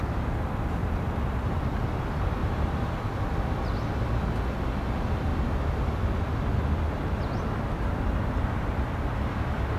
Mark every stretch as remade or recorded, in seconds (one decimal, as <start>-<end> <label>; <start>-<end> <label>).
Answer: 0.0-0.8 recorded; 0.8-1.6 remade; 1.6-2.4 recorded; 2.4-3.0 remade; 3.0-9.8 recorded

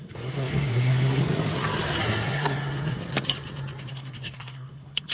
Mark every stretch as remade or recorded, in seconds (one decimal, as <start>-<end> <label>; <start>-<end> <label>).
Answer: 0.0-1.2 remade; 1.2-2.0 recorded; 2.0-3.0 remade; 3.0-3.9 recorded; 3.9-5.1 remade